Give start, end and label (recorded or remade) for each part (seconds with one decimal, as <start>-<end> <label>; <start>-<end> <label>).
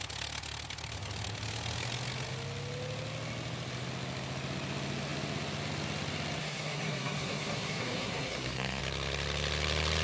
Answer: 0.0-6.4 recorded; 6.4-8.8 remade; 8.8-10.0 recorded